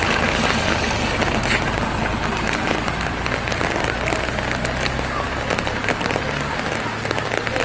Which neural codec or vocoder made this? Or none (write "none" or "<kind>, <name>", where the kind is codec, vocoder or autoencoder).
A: none